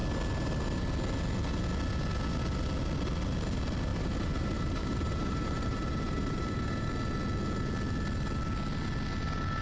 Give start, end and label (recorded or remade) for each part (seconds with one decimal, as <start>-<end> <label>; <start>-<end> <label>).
0.0-3.9 recorded; 3.9-6.9 remade; 6.9-9.6 recorded